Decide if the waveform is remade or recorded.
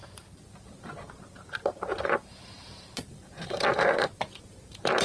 remade